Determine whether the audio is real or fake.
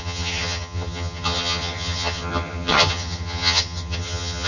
fake